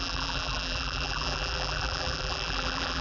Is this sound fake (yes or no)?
yes